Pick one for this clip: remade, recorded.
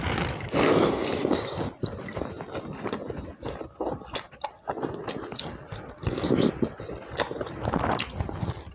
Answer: recorded